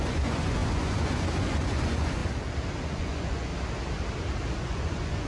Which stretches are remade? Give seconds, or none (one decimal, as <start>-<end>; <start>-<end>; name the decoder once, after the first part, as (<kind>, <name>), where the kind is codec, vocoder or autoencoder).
0.0-2.2 (vocoder, Vocos); 2.8-3.5; 4.6-5.3

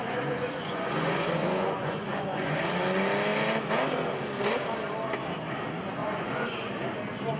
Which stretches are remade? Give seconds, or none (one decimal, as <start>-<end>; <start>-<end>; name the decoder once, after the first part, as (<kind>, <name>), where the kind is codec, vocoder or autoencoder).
0.0-2.6 (vocoder, Vocos); 6.0-6.7

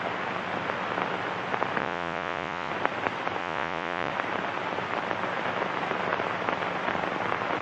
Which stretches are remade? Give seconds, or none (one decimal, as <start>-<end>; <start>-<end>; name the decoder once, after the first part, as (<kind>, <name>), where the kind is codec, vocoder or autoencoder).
1.8-2.7 (vocoder, Vocos); 3.4-4.1

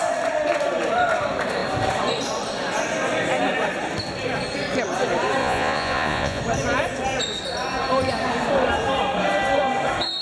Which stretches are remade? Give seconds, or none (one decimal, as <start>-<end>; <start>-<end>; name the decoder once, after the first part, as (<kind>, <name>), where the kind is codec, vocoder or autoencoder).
5.4-6.4 (vocoder, Vocos)

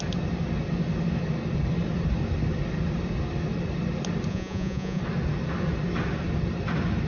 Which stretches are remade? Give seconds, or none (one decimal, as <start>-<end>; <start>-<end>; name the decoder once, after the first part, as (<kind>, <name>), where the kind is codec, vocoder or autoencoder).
4.3-5.0 (vocoder, Vocos)

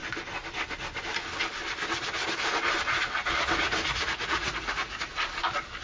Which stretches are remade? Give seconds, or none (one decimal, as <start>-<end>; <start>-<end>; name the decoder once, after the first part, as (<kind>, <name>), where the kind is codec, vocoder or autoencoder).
3.5-5.1 (vocoder, Vocos)

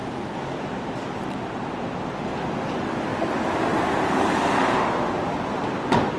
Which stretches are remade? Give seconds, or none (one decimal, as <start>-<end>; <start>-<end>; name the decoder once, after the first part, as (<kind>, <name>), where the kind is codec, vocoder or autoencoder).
none

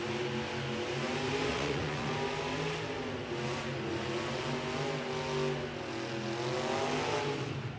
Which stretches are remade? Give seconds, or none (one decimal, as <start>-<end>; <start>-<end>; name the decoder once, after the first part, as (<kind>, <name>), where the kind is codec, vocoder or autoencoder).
1.5-2.1 (vocoder, Vocos)